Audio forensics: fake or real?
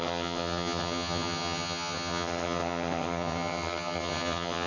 fake